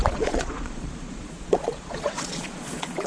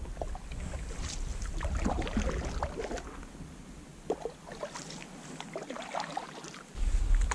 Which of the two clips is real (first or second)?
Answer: second